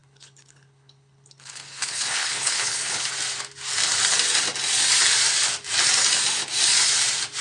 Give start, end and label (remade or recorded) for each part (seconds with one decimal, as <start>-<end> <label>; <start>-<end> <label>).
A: 0.0-3.1 remade; 3.1-7.4 recorded